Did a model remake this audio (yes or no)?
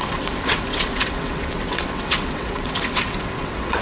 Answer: yes